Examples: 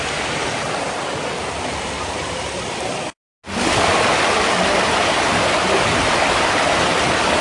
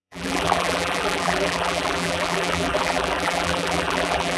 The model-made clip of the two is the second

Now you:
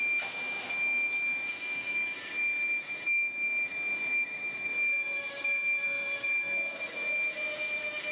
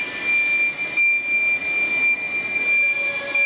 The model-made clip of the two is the first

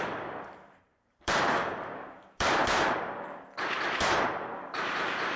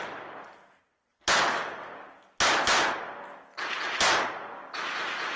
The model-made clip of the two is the first